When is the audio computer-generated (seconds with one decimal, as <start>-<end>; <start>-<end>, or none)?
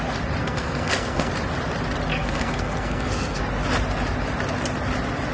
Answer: 0.4-1.3; 2.1-3.4